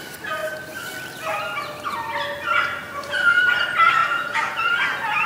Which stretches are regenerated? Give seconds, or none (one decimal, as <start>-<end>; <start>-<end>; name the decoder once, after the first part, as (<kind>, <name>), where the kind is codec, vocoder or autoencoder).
4.0-4.7 (vocoder, Vocos)